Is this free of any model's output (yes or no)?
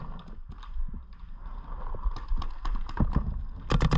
yes